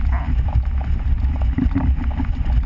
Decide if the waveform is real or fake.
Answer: real